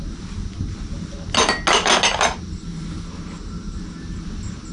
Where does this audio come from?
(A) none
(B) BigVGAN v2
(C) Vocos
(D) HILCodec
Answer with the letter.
A